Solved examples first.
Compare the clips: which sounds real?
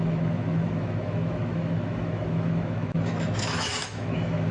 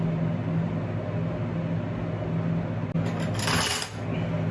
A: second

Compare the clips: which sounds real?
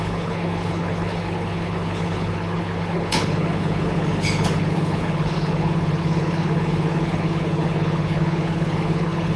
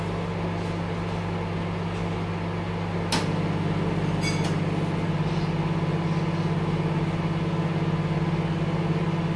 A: second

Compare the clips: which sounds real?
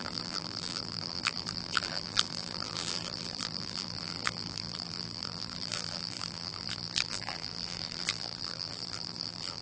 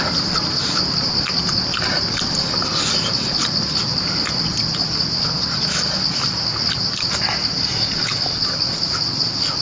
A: second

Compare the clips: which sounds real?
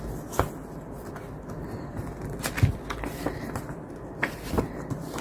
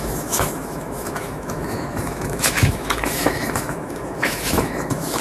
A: first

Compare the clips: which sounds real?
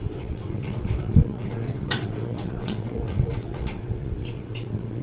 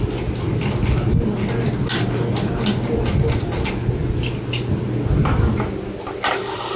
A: second